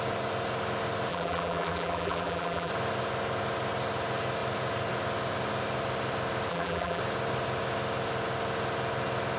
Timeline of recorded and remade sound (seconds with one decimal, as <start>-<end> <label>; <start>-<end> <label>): 0.0-1.1 recorded; 1.1-2.7 remade; 2.7-6.5 recorded; 6.5-7.0 remade; 7.0-9.4 recorded